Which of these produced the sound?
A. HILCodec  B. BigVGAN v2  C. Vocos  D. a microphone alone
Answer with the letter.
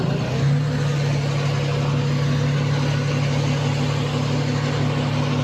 D